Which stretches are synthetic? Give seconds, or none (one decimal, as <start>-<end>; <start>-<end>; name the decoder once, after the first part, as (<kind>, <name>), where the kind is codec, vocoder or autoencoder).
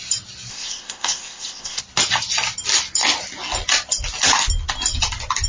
0.5-1.8 (codec, ZipCodec)